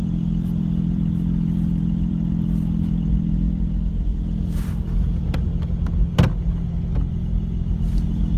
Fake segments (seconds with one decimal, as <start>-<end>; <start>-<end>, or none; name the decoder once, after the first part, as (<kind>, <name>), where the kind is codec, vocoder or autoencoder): 0.0-5.5 (vocoder, BigVGAN v2); 7.2-8.4